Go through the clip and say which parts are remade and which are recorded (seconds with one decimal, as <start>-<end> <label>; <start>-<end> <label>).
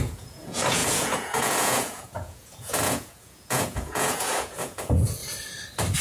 0.0-5.2 remade; 5.2-6.0 recorded